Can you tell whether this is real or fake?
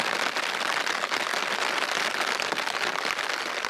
real